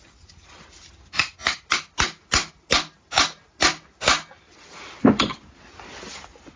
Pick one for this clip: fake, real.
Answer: real